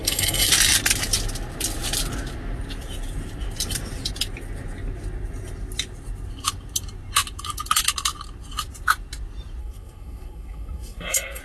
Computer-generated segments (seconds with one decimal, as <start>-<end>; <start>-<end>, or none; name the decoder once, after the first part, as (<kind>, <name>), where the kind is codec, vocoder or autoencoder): 0.0-0.5 (codec, SNAC); 9.6-11.4